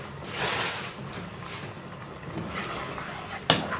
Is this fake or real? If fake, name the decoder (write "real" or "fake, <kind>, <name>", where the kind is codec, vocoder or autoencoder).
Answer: real